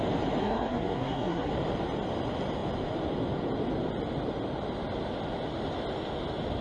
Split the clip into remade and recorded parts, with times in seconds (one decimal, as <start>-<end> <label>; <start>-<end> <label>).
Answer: 0.0-0.4 recorded; 0.4-1.5 remade; 1.5-6.6 recorded